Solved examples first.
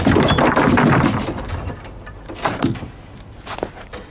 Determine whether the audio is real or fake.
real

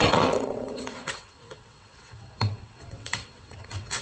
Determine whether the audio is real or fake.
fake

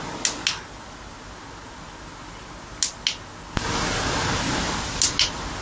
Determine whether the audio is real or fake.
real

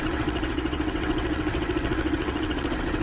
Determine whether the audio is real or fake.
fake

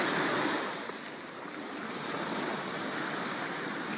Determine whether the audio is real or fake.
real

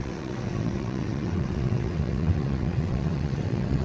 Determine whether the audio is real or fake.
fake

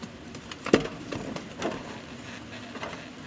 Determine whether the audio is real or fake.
real